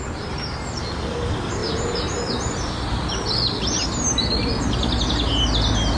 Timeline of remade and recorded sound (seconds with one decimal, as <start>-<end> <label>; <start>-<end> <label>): 0.0-6.0 recorded